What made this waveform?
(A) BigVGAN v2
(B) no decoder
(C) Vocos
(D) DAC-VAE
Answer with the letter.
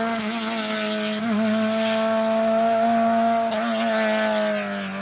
B